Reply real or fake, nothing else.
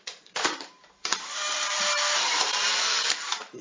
fake